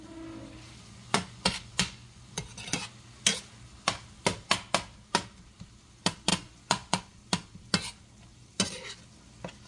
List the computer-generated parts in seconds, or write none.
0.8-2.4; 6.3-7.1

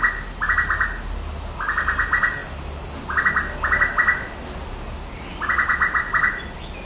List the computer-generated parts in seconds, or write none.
none

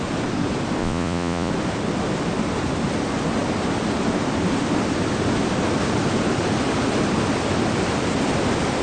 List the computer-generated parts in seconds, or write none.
0.8-1.5

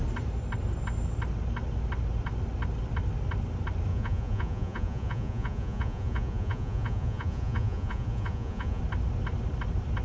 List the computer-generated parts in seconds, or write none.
3.9-8.8

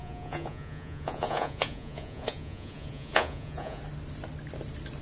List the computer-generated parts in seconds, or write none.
0.0-3.8

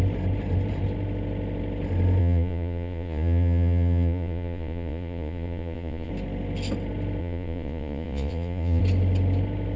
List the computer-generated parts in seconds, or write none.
2.2-6.1; 7.2-8.8

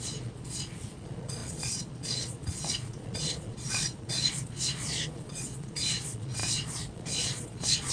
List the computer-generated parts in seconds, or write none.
0.0-7.9

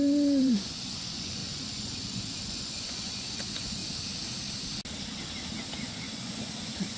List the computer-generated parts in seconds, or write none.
0.0-3.8; 5.9-7.0